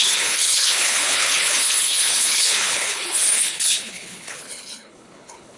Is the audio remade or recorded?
remade